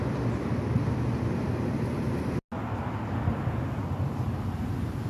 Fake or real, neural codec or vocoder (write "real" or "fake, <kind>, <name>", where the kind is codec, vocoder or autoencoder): real